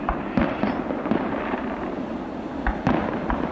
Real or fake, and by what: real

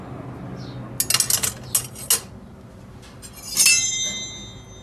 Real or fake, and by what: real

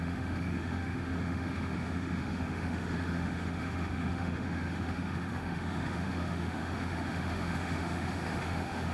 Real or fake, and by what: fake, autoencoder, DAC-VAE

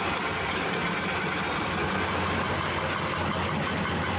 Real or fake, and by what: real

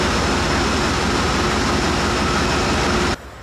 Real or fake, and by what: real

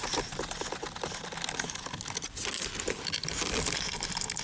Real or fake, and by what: real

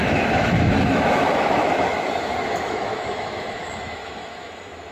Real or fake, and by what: fake, autoencoder, DAC-VAE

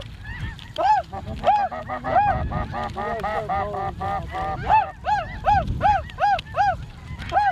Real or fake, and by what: real